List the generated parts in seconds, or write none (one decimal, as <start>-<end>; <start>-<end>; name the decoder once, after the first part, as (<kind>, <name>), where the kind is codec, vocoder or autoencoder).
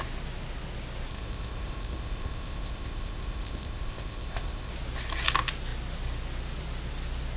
1.1-4.7 (codec, ZipCodec)